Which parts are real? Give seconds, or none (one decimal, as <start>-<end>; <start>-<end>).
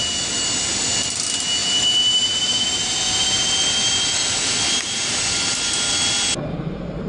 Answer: 0.0-7.1